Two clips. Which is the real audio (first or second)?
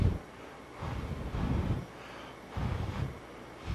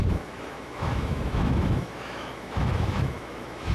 first